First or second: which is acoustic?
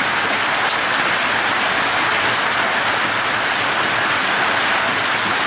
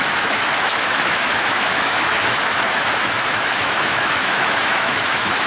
first